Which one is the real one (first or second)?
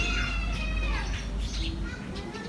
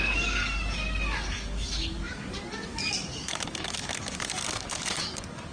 first